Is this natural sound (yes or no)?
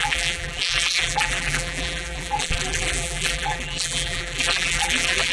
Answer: no